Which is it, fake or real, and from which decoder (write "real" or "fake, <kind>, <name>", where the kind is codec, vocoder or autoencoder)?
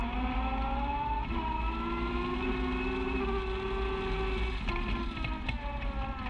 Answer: real